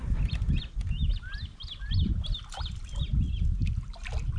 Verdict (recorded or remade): recorded